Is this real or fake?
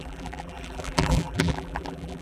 fake